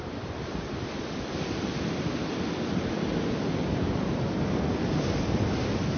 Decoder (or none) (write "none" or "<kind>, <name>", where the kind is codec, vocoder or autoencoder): none